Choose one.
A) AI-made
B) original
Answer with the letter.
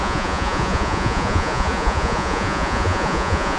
A